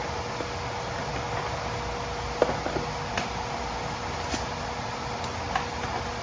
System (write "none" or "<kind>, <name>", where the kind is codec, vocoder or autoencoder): none